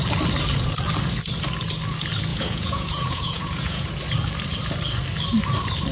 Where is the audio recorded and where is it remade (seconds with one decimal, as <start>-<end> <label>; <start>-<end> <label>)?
0.0-2.3 recorded; 2.3-3.9 remade; 3.9-5.9 recorded